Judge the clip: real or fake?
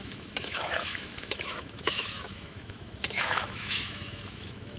fake